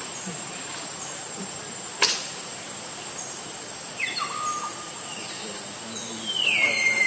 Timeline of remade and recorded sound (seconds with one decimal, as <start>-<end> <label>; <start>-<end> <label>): 0.0-7.1 recorded